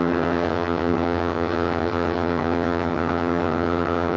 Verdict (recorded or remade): remade